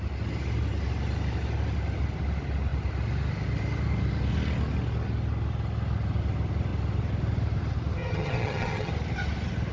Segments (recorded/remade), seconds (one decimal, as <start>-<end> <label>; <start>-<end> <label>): 0.0-8.0 recorded; 8.0-8.9 remade; 8.9-9.7 recorded